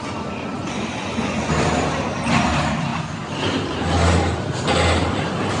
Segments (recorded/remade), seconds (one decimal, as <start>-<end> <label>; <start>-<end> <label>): 0.0-0.5 recorded; 0.5-1.5 remade; 1.5-5.6 recorded